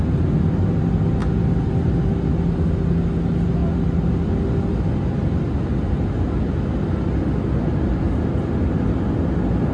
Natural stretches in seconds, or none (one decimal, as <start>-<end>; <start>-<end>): 0.0-9.7